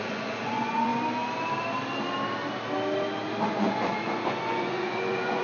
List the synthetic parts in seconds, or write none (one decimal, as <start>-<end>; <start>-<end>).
0.0-0.9; 3.5-5.4